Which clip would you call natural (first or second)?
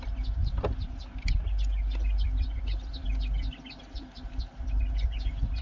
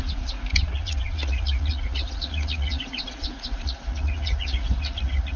first